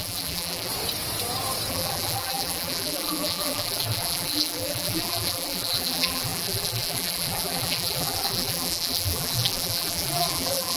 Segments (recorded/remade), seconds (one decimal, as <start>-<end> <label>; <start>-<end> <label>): 0.0-0.7 remade; 0.7-1.7 recorded; 1.7-10.8 remade